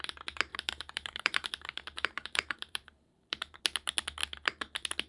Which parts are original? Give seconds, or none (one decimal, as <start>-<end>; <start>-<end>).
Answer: 0.0-0.5; 3.6-5.1